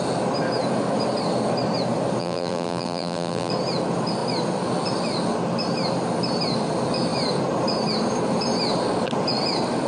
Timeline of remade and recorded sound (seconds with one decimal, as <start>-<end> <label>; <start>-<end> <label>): 0.0-2.2 recorded; 2.2-3.5 remade; 3.5-9.9 recorded